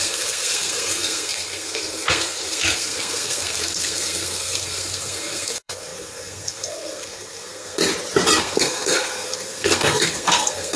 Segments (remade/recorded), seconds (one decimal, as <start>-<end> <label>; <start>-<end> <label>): 0.0-7.8 remade; 7.8-8.4 recorded; 8.4-10.8 remade